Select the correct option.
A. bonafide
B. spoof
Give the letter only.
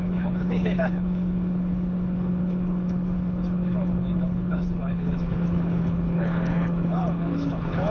B